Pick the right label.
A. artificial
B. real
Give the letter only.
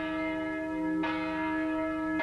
B